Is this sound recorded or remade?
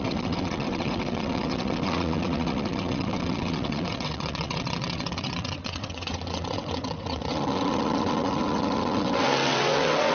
remade